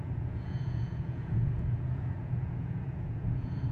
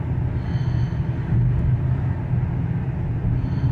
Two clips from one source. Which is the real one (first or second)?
second